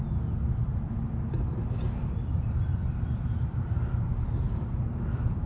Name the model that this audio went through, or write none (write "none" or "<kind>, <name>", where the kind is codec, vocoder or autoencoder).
none